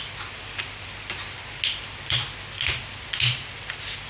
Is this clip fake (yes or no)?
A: no